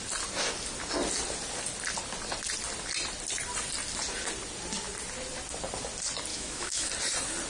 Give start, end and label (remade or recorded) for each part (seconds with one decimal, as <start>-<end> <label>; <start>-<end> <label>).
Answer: 0.0-6.3 recorded; 6.3-6.9 remade; 6.9-7.5 recorded